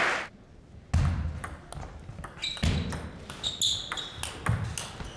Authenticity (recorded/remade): recorded